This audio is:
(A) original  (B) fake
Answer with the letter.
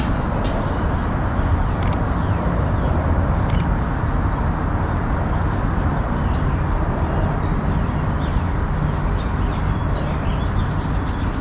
A